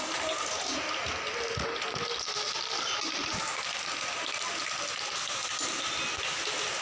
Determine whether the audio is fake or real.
real